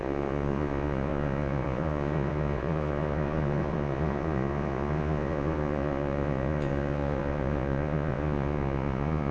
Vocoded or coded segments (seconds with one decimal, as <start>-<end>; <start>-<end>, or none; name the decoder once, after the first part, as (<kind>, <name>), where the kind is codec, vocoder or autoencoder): 0.0-9.3 (vocoder, Vocos)